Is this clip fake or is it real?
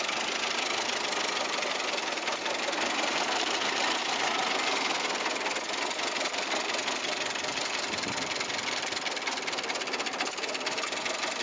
real